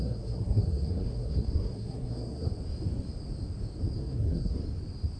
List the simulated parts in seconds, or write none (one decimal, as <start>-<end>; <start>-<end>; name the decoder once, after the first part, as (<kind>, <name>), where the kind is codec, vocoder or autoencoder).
0.0-2.5 (codec, SNAC); 4.0-4.6